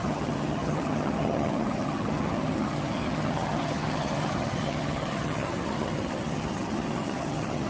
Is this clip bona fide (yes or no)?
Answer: no